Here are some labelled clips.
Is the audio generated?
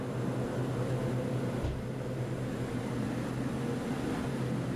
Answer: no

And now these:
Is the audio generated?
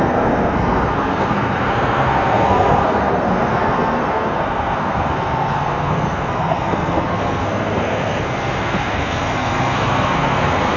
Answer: yes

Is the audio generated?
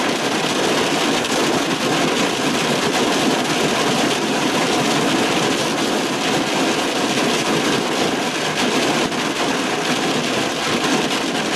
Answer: no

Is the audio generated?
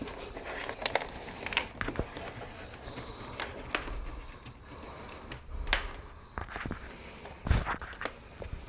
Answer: no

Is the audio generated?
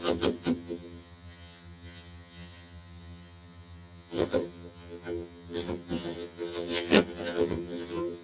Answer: yes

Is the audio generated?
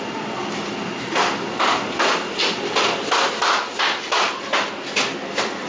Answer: no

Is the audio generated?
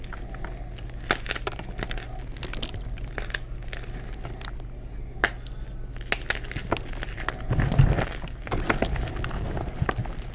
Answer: no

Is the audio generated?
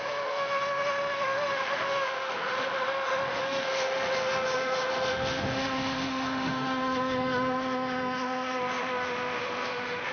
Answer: yes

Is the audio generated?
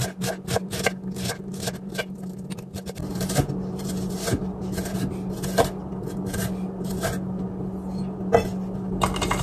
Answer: no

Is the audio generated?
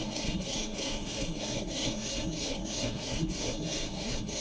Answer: yes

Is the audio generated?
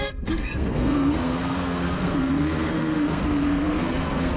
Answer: yes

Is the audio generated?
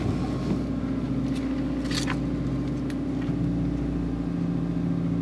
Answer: no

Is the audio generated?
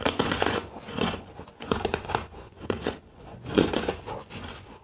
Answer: yes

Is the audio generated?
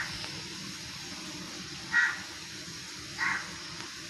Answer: no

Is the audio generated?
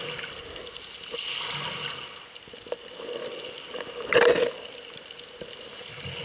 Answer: no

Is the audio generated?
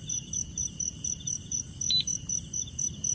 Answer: yes